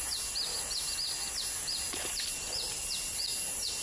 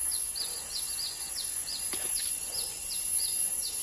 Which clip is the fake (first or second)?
second